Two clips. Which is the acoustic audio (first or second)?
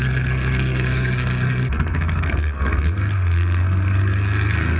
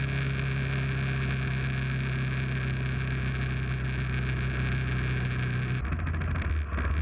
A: second